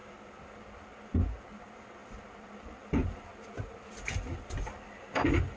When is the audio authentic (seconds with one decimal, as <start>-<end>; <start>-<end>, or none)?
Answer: 0.0-5.6